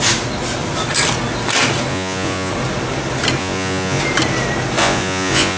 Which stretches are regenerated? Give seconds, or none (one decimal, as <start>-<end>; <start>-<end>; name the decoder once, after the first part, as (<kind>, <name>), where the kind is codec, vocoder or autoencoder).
1.9-2.5 (vocoder, Vocos); 3.4-4.0; 4.8-5.6

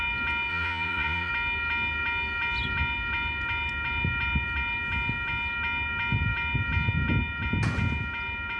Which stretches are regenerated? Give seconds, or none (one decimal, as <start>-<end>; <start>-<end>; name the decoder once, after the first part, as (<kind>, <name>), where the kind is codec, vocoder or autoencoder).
0.5-1.3 (vocoder, Vocos)

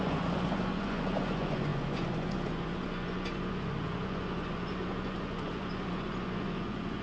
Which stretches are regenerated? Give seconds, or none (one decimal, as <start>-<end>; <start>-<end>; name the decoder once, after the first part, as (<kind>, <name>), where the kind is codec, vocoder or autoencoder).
0.0-7.0 (vocoder, Vocos)

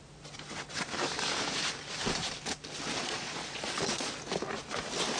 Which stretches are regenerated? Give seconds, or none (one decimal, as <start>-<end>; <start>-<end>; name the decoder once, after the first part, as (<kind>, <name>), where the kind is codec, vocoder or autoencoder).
3.0-4.1 (vocoder, Vocos)

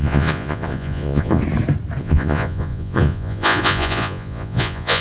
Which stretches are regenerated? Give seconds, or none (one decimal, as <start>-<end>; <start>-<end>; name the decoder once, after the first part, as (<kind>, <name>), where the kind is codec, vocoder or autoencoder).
0.0-1.4 (vocoder, Vocos); 2.0-5.0

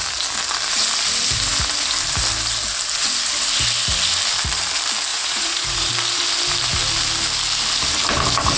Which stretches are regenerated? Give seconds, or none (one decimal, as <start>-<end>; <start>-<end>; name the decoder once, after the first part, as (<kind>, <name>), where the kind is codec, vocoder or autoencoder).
5.1-5.9 (vocoder, Vocos)

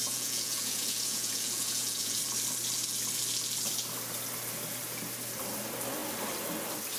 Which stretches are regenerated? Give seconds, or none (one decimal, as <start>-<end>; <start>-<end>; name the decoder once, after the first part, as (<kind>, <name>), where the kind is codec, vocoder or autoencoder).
0.0-2.2 (vocoder, Vocos)

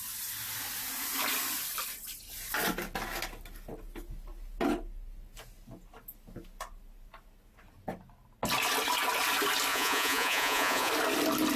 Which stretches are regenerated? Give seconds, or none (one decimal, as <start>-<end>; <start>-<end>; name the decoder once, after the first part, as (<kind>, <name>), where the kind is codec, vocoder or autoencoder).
9.7-10.9 (vocoder, Vocos)